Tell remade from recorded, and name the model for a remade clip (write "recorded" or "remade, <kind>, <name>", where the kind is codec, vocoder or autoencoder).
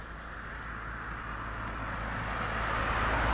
recorded